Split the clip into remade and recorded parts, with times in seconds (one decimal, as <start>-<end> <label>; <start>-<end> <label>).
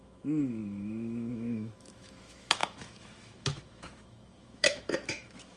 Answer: 0.0-5.6 remade